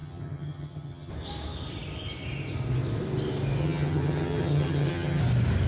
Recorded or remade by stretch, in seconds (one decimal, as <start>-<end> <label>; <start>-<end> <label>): 0.0-1.1 remade; 1.1-3.6 recorded; 3.6-5.2 remade; 5.2-5.7 recorded